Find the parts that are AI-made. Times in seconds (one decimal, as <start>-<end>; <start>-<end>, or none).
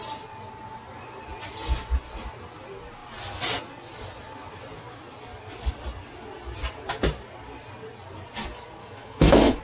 8.8-9.6